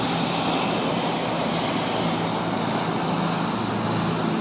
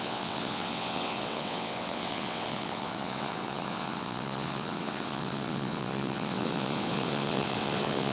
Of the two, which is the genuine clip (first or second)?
first